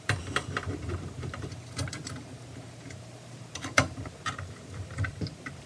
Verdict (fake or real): fake